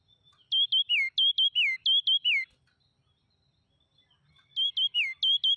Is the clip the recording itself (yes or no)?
yes